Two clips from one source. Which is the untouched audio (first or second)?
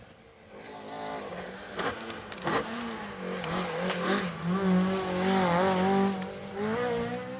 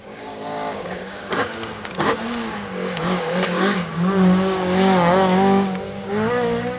first